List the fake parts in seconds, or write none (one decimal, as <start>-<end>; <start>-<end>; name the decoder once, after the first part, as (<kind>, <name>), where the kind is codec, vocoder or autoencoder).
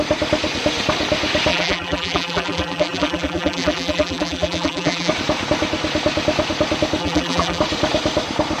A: 1.5-5.1 (vocoder, BigVGAN v2); 7.0-7.6